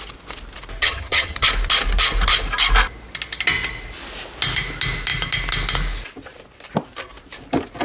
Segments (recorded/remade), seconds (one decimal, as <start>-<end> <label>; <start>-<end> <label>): 0.0-0.8 recorded; 0.8-1.5 remade; 1.5-7.8 recorded